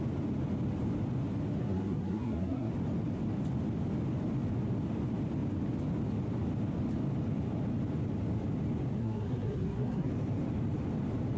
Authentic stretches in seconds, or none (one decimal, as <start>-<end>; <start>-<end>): 0.0-1.6; 2.7-9.0; 10.1-11.4